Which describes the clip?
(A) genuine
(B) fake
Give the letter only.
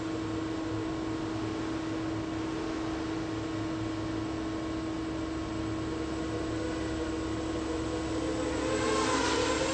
A